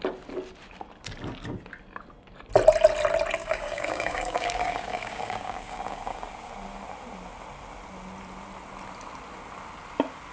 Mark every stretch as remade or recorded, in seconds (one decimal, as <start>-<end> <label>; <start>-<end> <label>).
0.0-3.4 recorded; 3.4-6.5 remade; 6.5-10.3 recorded